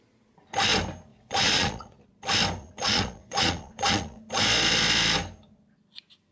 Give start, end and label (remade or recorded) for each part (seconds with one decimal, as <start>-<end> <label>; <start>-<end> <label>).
0.0-1.1 recorded; 1.1-2.0 remade; 2.0-2.6 recorded; 2.6-4.2 remade; 4.2-6.3 recorded